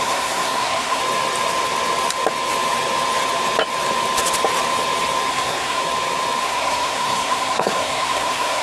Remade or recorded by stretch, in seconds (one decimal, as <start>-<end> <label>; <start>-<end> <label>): 0.0-1.0 remade; 1.0-5.3 recorded; 5.3-5.8 remade; 5.8-6.4 recorded; 6.4-8.6 remade

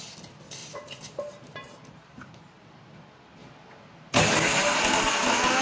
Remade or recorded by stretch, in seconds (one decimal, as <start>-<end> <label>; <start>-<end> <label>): 0.0-0.6 recorded; 0.6-2.4 remade; 2.4-3.4 recorded; 3.4-4.2 remade; 4.2-5.6 recorded

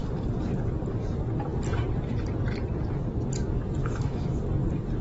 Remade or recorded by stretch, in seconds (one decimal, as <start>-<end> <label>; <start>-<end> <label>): 0.0-3.8 recorded; 3.8-4.4 remade; 4.4-5.0 recorded

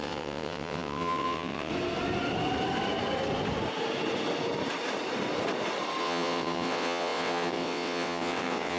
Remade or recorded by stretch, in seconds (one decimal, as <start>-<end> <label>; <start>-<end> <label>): 0.0-1.7 remade; 1.7-6.0 recorded; 6.0-8.8 remade